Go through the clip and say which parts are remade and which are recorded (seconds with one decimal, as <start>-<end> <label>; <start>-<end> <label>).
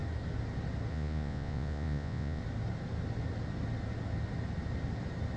0.0-0.9 recorded; 0.9-2.4 remade; 2.4-5.4 recorded